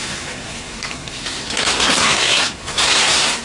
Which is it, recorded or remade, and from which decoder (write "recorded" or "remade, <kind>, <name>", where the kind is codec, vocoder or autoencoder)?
remade, codec, SNAC